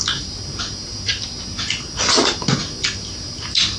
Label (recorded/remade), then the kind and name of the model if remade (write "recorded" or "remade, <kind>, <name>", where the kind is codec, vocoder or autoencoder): recorded